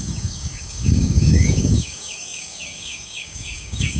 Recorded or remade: remade